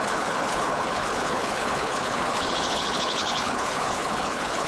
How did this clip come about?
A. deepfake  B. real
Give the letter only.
A